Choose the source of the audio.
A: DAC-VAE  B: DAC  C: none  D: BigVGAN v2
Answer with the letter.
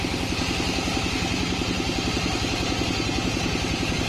C